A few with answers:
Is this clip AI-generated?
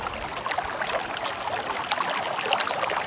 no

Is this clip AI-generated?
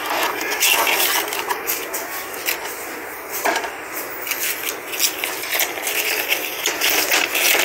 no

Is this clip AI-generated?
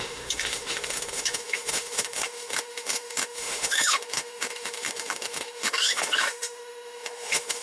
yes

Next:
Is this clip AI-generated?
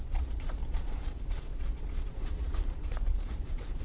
yes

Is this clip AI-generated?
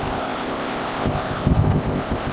yes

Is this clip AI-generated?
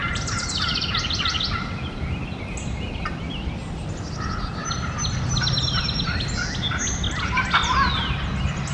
no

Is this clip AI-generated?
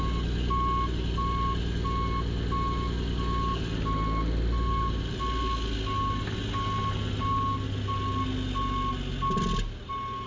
no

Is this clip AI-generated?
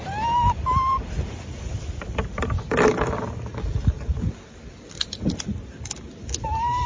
no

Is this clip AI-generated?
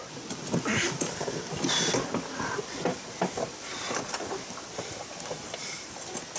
no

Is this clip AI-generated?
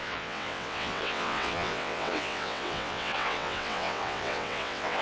yes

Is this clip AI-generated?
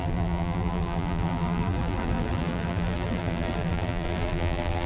yes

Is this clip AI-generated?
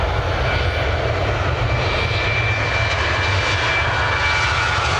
no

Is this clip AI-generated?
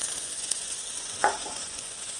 yes